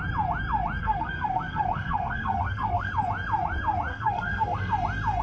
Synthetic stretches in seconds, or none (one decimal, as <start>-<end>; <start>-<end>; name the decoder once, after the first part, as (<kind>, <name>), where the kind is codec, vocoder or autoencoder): 0.8-2.9 (codec, SNAC); 3.9-4.7

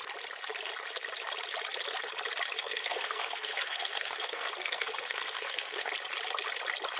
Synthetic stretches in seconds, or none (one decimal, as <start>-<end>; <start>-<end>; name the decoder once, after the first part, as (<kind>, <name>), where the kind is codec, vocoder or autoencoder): 2.6-5.9 (codec, SNAC)

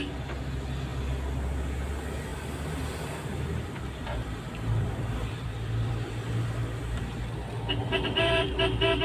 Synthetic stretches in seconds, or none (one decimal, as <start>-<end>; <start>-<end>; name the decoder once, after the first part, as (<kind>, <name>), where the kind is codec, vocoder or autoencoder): 2.3-7.2 (vocoder, BigVGAN v2); 7.8-8.5

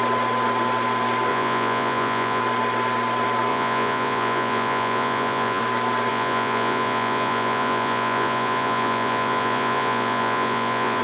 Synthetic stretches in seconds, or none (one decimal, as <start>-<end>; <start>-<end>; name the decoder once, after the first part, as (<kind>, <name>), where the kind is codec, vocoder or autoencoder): 1.3-2.4 (vocoder, Vocos); 3.5-5.6; 6.1-11.0

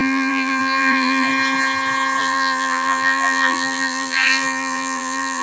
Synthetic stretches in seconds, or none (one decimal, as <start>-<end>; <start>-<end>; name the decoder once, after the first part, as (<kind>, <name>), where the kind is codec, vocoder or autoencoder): 0.0-1.3 (vocoder, BigVGAN v2); 2.2-5.4

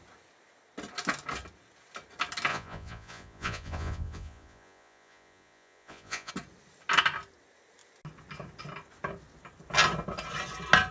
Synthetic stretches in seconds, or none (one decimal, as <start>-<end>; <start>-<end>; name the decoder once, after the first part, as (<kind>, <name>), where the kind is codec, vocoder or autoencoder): 2.5-6.3 (vocoder, Vocos)

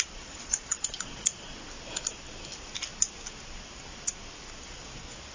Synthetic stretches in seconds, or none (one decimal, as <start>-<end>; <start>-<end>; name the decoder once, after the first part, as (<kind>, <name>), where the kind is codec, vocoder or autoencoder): 0.0-1.5 (vocoder, Vocos); 4.7-5.3

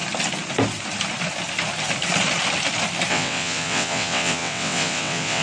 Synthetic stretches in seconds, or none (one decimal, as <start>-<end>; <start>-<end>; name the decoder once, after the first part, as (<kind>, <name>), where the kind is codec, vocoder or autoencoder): 3.1-5.4 (vocoder, WaveNeXt)